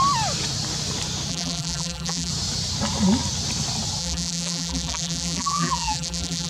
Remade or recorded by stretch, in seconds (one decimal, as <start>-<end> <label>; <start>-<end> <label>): 0.0-1.3 recorded; 1.3-2.3 remade; 2.3-4.0 recorded; 4.0-6.5 remade